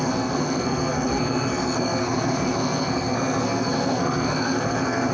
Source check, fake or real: fake